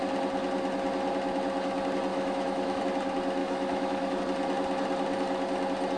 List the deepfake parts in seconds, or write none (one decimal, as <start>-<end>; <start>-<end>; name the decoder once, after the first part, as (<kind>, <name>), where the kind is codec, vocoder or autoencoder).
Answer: 2.1-2.8 (autoencoder, DAC-VAE); 3.4-4.2